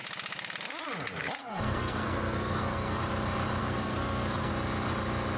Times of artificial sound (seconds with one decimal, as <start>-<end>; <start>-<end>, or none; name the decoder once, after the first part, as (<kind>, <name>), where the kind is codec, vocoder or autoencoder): 1.4-3.0 (codec, SNAC); 3.6-4.5